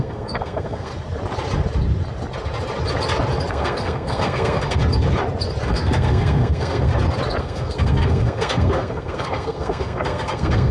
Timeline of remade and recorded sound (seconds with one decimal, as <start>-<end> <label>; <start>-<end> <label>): 0.0-0.9 remade; 0.9-3.5 recorded; 3.5-4.8 remade; 4.8-5.7 recorded; 5.7-6.9 remade; 6.9-7.4 recorded; 7.4-10.7 remade